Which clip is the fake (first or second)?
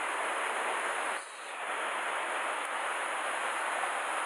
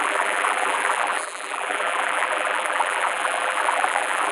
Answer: second